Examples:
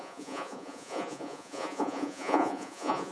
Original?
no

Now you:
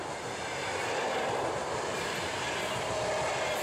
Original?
yes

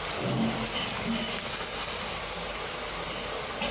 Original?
yes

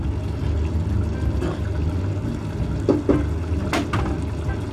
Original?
yes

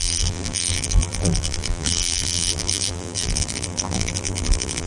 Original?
no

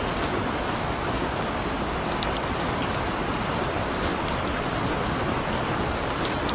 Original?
yes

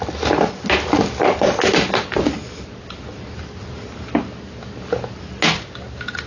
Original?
yes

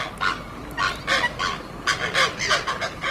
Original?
yes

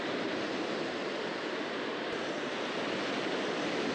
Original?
yes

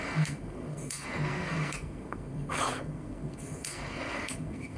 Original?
no